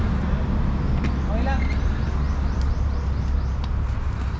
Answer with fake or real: real